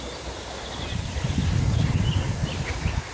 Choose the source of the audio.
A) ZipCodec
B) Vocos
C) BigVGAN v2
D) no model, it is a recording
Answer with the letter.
D